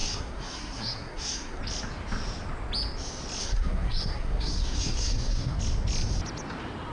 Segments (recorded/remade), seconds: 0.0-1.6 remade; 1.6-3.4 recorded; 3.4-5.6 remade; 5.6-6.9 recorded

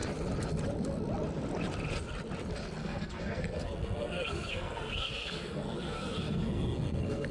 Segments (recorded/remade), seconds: 0.0-2.8 recorded; 2.8-7.3 remade

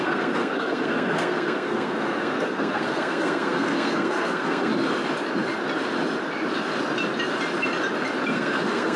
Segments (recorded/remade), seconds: 0.0-4.7 remade; 4.7-8.3 recorded; 8.3-9.0 remade

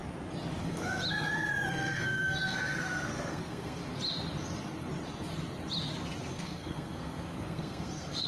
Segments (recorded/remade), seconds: 0.0-0.6 recorded; 0.6-1.0 remade; 1.0-1.7 recorded; 1.7-3.8 remade; 3.8-6.3 recorded; 6.3-8.3 remade

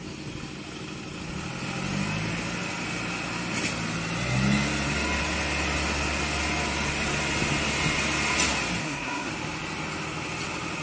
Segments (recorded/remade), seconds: 0.0-8.8 recorded; 8.8-9.3 remade; 9.3-10.8 recorded

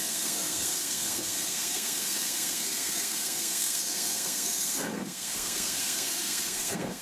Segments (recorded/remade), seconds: 0.0-7.0 remade